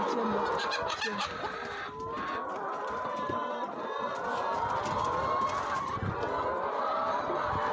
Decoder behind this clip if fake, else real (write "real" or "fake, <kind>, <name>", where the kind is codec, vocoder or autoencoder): real